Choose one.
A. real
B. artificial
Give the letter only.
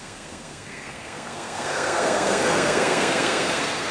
B